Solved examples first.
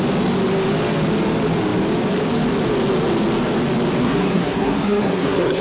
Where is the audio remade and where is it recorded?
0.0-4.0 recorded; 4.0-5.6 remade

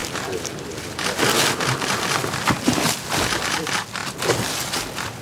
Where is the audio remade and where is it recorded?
0.0-1.2 remade; 1.2-5.2 recorded

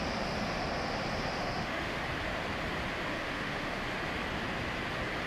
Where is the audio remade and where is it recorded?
0.0-1.4 recorded; 1.4-2.0 remade; 2.0-3.1 recorded; 3.1-3.8 remade; 3.8-5.3 recorded

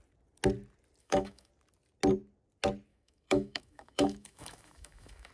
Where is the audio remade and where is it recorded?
0.0-1.0 recorded; 1.0-1.5 remade; 1.5-2.9 recorded; 2.9-5.3 remade

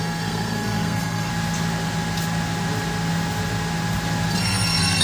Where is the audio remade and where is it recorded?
0.0-1.3 remade; 1.3-4.3 recorded; 4.3-5.0 remade

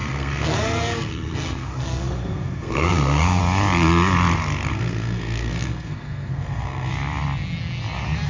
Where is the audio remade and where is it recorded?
0.0-3.4 remade; 3.4-4.7 recorded; 4.7-6.9 remade; 6.9-8.3 recorded

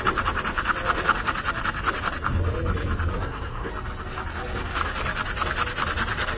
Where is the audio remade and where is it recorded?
0.0-3.1 recorded; 3.1-3.7 remade; 3.7-6.4 recorded

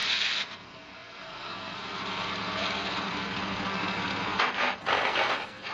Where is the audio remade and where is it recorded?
0.0-5.7 remade